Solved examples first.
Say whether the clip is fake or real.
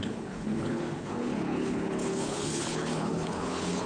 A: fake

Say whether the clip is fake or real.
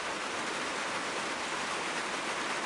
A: real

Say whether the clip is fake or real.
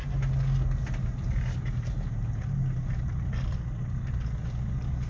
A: real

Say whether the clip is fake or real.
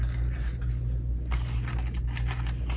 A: real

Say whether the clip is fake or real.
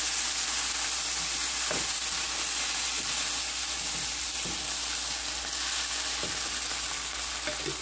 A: real